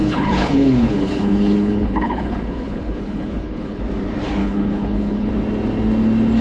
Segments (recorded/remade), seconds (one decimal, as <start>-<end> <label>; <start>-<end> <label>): 0.0-3.8 remade; 3.8-4.4 recorded; 4.4-5.3 remade; 5.3-6.4 recorded